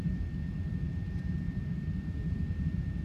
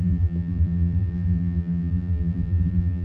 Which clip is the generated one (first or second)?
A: second